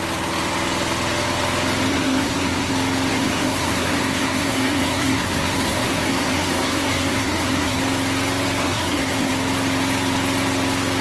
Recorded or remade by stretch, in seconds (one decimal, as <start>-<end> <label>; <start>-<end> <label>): 0.0-1.9 recorded; 1.9-2.7 remade; 2.7-3.1 recorded; 3.1-7.8 remade; 7.8-8.6 recorded; 8.6-9.3 remade; 9.3-11.0 recorded